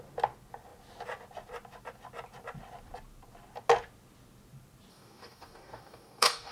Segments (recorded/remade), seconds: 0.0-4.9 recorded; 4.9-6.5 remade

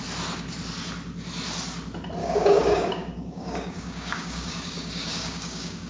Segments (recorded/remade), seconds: 0.0-2.2 recorded; 2.2-5.9 remade

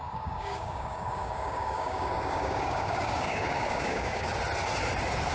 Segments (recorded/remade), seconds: 0.0-4.3 remade; 4.3-5.3 recorded